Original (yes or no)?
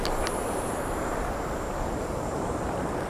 no